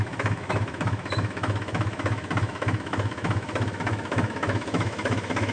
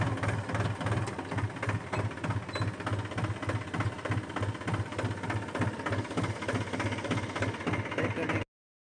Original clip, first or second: second